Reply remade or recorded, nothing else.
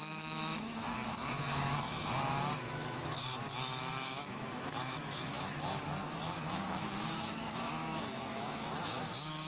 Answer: remade